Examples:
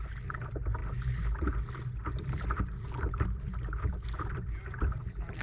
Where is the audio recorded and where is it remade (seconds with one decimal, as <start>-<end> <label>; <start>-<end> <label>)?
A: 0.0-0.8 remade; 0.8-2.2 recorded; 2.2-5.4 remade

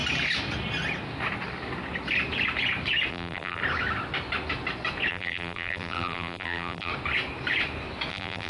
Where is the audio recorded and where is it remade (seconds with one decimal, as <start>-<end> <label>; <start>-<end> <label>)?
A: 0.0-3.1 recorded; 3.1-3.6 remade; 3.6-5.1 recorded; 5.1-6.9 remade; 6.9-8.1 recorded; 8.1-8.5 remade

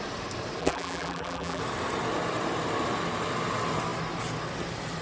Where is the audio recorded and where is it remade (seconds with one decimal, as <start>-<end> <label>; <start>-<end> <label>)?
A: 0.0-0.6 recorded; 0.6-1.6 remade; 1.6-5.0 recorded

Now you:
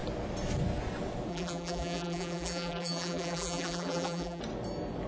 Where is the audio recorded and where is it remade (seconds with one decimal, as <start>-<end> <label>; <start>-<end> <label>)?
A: 0.0-1.3 recorded; 1.3-4.4 remade; 4.4-5.1 recorded

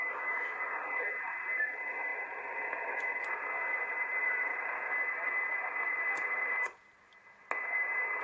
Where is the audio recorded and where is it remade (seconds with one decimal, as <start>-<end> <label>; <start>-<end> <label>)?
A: 0.0-2.1 remade; 2.1-3.5 recorded; 3.5-4.5 remade; 4.5-5.8 recorded; 5.8-7.1 remade; 7.1-7.6 recorded; 7.6-8.2 remade

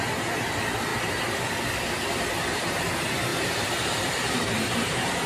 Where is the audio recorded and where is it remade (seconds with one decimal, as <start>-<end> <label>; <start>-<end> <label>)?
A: 0.0-0.9 remade; 0.9-2.5 recorded; 2.5-5.3 remade